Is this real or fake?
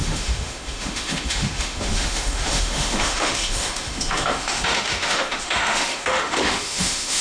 fake